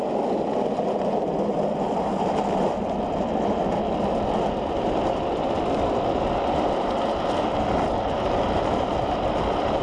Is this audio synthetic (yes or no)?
no